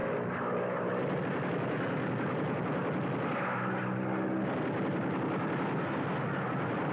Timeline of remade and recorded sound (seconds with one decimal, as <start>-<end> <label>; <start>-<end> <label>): 0.0-6.9 recorded